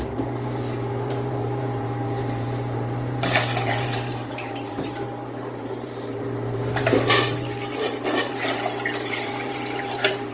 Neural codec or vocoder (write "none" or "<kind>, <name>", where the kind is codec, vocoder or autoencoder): vocoder, BigVGAN v2